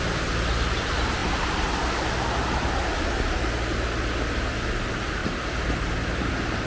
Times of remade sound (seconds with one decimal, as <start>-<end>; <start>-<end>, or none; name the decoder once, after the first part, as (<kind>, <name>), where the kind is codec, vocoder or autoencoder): 1.2-1.7 (vocoder, BigVGAN v2); 5.2-6.3